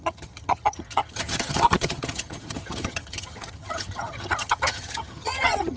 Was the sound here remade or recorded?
remade